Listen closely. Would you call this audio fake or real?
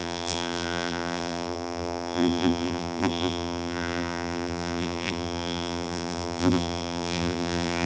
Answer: fake